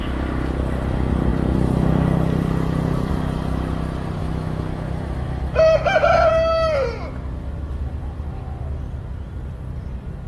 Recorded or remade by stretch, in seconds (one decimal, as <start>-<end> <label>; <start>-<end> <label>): 0.0-4.2 recorded; 4.2-6.3 remade; 6.3-10.3 recorded